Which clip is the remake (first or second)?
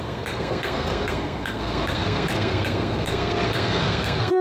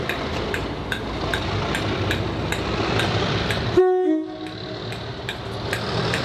first